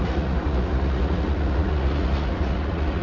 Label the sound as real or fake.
fake